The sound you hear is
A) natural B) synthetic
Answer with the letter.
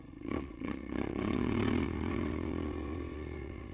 B